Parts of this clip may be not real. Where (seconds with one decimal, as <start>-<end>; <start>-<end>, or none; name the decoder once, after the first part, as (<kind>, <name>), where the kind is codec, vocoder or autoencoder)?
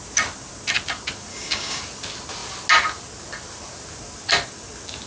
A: 1.3-1.8 (codec, DAC)